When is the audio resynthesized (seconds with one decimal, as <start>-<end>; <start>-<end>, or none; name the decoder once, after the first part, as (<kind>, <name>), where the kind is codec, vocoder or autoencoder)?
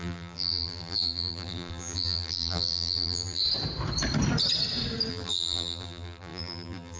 0.0-3.4 (vocoder, BigVGAN v2); 5.1-7.0